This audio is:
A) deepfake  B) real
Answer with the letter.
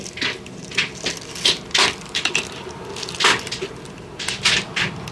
B